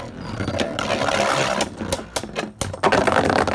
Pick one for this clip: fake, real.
real